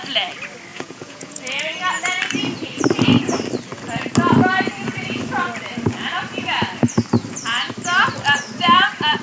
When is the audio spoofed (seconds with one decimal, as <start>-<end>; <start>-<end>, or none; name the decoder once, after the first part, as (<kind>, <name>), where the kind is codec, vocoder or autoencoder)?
0.7-1.6 (vocoder, Vocos)